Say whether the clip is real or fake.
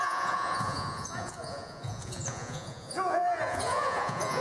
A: fake